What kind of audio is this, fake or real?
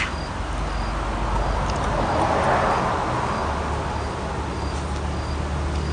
real